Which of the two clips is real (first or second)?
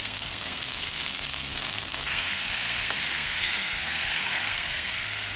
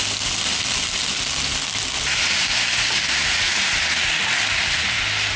second